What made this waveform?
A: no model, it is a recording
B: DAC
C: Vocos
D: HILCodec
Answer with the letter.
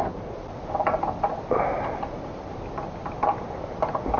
A